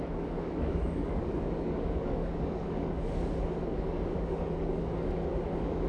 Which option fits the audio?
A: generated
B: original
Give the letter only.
A